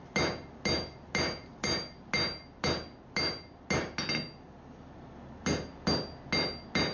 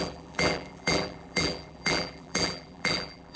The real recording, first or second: first